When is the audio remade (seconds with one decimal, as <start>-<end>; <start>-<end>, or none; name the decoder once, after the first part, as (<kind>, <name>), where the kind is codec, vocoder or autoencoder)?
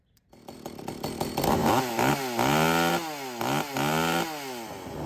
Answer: 1.6-2.1 (vocoder, BigVGAN v2)